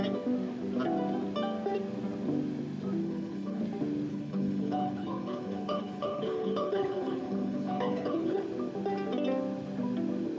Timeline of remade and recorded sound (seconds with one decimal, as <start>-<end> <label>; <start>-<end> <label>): 0.0-3.0 recorded; 3.0-3.6 remade; 3.6-4.1 recorded; 4.1-8.4 remade; 8.4-10.4 recorded